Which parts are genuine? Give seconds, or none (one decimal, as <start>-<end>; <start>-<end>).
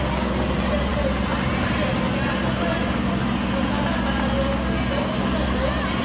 0.0-6.0